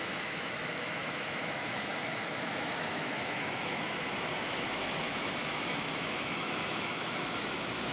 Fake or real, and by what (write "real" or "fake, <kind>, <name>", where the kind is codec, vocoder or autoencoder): fake, autoencoder, DAC-VAE